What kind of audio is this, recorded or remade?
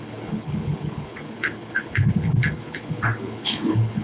remade